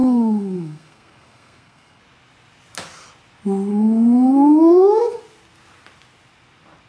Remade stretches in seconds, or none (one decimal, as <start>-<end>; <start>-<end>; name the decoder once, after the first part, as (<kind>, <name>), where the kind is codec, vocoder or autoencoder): 0.0-2.0 (codec, SNAC); 3.7-5.2